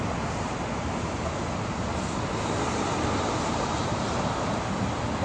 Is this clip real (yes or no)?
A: yes